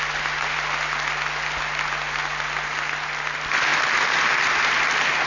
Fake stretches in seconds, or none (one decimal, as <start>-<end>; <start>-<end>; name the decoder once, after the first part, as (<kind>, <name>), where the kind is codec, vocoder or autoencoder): none

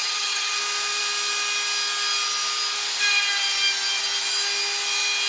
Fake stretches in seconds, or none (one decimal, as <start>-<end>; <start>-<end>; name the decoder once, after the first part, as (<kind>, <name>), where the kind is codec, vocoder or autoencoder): 0.0-0.6 (vocoder, HiFi-GAN)

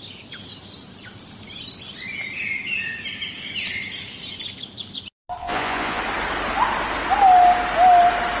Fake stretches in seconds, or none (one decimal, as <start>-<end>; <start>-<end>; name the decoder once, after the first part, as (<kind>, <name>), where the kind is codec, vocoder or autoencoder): 5.4-6.0 (vocoder, Vocos)